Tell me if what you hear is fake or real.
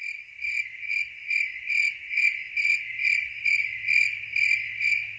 real